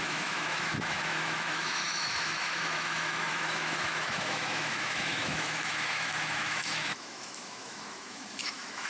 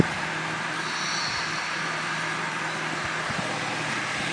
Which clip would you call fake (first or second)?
first